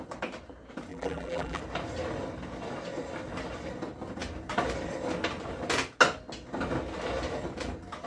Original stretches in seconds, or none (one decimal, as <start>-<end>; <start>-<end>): 0.0-0.9; 1.6-8.1

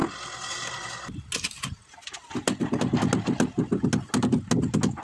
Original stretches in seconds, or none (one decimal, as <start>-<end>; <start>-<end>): 0.0-5.0